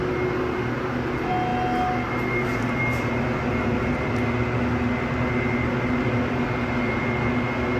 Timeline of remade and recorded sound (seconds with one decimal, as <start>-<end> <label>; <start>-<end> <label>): 0.0-7.8 recorded